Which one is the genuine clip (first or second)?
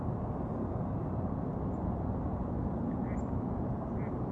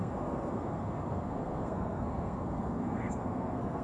first